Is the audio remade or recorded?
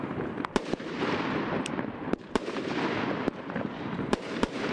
remade